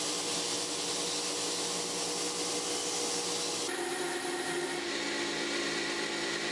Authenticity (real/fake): real